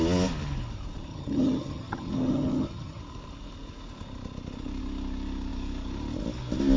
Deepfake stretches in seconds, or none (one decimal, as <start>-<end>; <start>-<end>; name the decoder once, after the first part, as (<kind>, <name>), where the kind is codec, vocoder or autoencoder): 1.1-3.0 (vocoder, HiFi-GAN)